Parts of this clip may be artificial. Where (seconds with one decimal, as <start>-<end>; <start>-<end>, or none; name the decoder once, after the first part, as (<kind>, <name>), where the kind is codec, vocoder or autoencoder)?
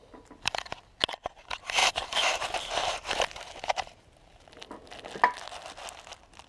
1.8-4.5 (vocoder, BigVGAN v2)